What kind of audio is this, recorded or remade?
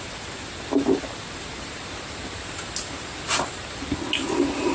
recorded